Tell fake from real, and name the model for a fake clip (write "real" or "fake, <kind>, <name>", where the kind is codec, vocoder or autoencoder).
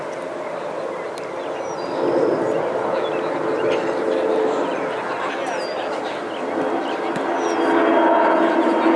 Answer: real